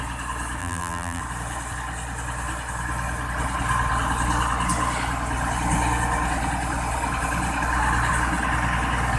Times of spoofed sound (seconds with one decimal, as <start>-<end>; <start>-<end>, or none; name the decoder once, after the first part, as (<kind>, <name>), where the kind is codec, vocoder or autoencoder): 0.6-1.2 (vocoder, BigVGAN v2)